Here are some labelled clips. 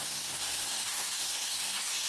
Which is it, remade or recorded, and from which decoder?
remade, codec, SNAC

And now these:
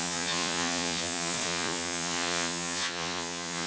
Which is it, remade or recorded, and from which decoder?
remade, vocoder, Vocos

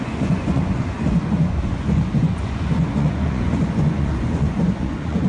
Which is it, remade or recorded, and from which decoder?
remade, vocoder, Vocos